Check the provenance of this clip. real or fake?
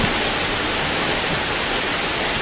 real